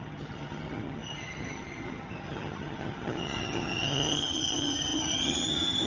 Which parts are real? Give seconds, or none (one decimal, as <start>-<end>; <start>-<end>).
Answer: none